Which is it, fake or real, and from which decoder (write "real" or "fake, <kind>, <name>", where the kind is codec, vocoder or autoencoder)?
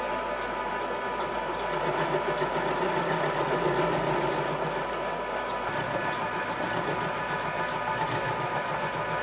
real